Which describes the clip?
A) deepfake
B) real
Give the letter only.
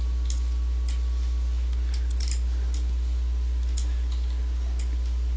B